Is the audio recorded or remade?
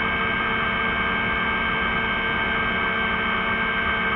recorded